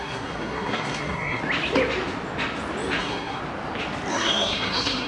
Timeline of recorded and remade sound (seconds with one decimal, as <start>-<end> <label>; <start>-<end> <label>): 0.0-1.4 remade; 1.4-3.0 recorded; 3.0-3.4 remade; 3.4-4.1 recorded; 4.1-5.1 remade